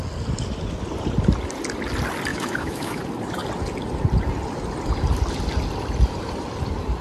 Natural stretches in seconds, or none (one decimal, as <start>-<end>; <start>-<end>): 0.0-2.3; 3.0-7.0